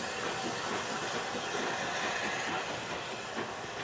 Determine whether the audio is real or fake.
real